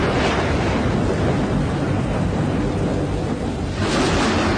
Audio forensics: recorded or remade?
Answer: recorded